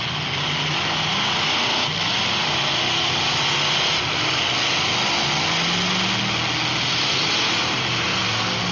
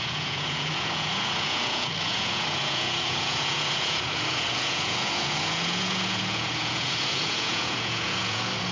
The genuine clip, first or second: first